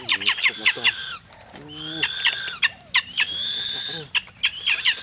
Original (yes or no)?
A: yes